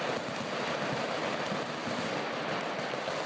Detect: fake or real real